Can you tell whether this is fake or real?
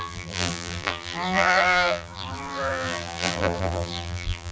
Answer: fake